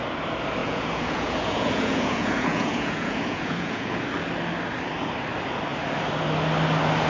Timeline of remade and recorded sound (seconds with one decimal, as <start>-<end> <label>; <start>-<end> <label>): 0.0-0.6 recorded; 0.6-4.0 remade; 4.0-7.1 recorded